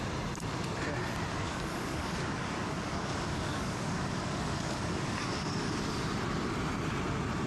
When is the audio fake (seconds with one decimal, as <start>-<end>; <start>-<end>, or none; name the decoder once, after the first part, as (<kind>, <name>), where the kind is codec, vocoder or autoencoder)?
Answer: 1.3-5.8 (codec, DAC)